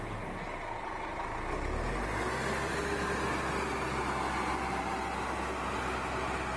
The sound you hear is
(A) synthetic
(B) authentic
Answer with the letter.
B